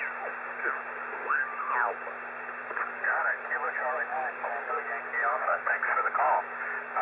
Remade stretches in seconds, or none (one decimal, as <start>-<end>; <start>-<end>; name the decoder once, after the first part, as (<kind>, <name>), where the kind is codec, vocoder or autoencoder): 1.1-1.7 (codec, DAC); 2.6-3.5; 4.1-4.7; 5.2-6.4